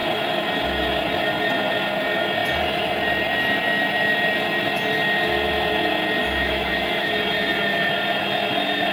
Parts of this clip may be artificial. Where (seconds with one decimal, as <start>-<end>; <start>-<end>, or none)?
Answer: 6.2-7.1